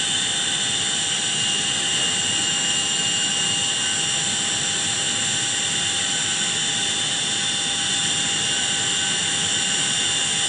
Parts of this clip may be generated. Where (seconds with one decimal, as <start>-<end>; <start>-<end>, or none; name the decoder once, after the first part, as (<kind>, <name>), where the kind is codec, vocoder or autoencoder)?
2.4-3.3 (autoencoder, DAC-VAE)